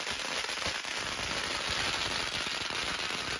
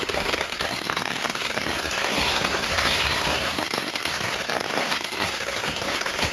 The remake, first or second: second